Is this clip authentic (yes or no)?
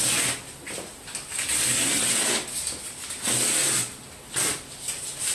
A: yes